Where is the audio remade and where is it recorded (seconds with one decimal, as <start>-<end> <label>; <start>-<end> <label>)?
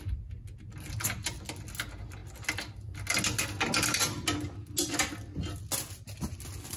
0.0-6.8 recorded